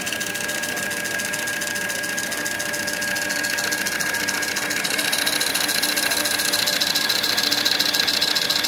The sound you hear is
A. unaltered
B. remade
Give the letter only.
A